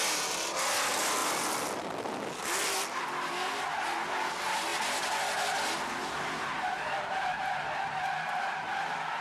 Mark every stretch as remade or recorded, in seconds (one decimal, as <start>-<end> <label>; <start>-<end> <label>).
0.0-9.2 recorded